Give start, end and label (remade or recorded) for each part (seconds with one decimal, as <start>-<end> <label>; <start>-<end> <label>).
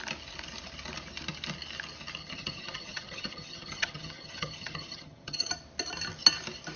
0.0-2.2 recorded; 2.2-5.5 remade; 5.5-6.8 recorded